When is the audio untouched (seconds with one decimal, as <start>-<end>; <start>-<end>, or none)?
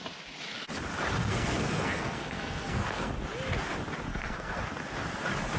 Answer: 0.0-1.2; 3.1-4.1; 4.6-5.6